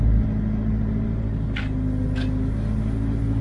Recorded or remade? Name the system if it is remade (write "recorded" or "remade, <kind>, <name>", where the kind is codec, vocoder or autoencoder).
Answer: recorded